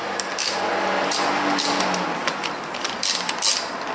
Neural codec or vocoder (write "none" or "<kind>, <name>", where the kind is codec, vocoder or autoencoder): none